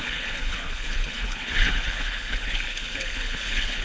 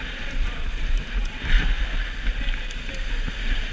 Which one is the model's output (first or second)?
first